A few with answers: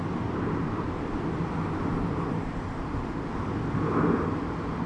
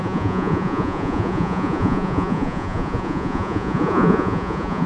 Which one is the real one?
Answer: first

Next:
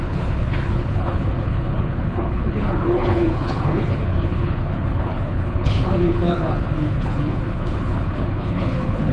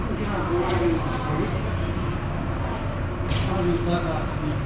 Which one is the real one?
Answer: second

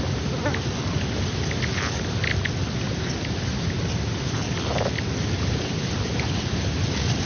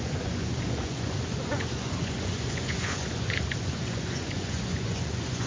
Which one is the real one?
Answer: first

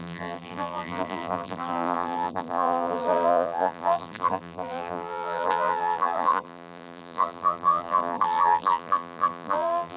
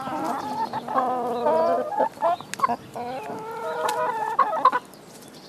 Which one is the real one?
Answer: second